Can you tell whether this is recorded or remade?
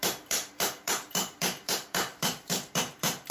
remade